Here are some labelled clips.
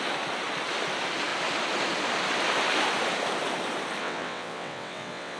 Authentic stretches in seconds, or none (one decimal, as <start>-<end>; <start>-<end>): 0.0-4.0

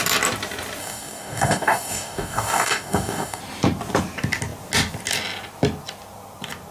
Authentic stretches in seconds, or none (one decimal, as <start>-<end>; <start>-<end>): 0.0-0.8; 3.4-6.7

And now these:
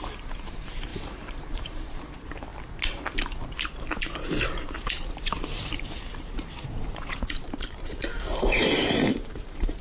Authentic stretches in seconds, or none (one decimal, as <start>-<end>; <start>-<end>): 2.5-5.1